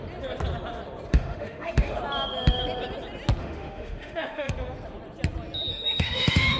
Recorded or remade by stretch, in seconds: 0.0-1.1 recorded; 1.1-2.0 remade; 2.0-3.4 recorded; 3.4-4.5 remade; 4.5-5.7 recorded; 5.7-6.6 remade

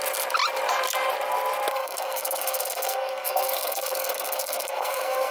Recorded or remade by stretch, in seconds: 0.0-1.7 recorded; 1.7-5.3 remade

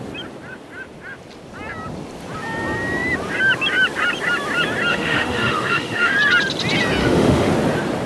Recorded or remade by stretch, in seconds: 0.0-4.9 recorded; 4.9-6.1 remade; 6.1-7.0 recorded; 7.0-7.5 remade; 7.5-8.1 recorded

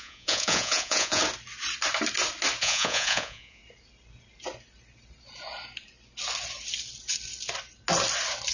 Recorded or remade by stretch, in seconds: 0.0-1.2 remade; 1.2-2.6 recorded; 2.6-3.6 remade; 3.6-8.5 recorded

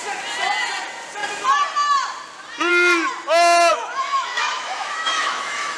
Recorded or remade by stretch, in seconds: 0.0-3.7 recorded; 3.7-5.8 remade

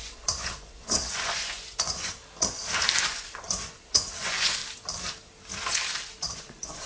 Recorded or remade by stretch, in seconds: 0.0-2.2 remade; 2.2-3.0 recorded; 3.0-4.6 remade; 4.6-6.1 recorded; 6.1-6.9 remade